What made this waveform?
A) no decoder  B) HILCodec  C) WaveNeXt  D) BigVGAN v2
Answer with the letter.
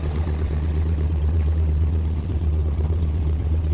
C